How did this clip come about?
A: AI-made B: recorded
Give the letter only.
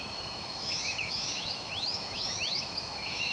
A